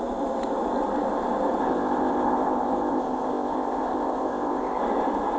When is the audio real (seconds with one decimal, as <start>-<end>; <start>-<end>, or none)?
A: 0.0-1.6; 4.8-5.4

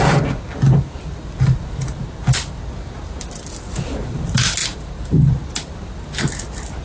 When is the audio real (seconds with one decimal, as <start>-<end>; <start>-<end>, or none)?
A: 0.0-6.8